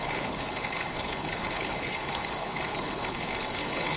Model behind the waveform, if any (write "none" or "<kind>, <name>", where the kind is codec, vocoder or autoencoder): codec, HILCodec